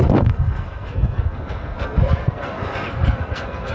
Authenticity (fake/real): fake